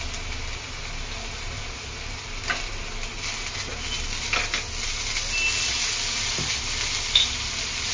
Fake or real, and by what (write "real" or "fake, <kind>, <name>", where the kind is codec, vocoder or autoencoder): real